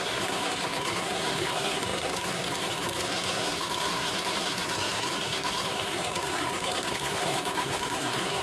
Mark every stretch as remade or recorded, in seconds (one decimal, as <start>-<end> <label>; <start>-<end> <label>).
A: 0.0-8.4 remade